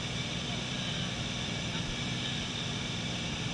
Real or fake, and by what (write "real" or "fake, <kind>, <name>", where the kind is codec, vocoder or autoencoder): fake, vocoder, BigVGAN v2